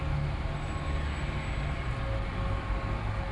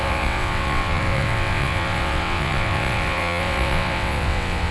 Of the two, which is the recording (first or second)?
first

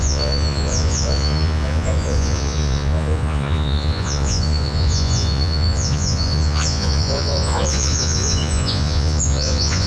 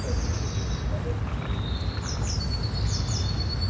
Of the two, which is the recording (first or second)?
second